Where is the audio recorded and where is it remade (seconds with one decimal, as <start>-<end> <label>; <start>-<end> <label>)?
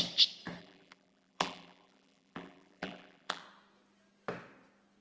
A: 0.0-0.6 recorded; 0.6-3.4 remade; 3.4-5.0 recorded